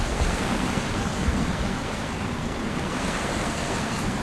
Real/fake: fake